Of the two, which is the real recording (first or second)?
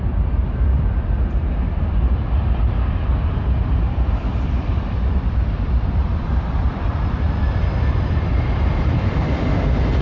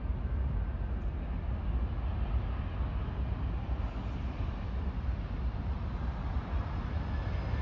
second